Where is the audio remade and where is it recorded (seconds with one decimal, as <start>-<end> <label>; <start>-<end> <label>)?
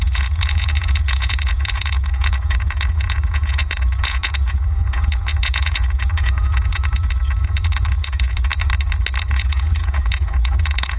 0.0-8.5 remade; 8.5-9.3 recorded; 9.3-11.0 remade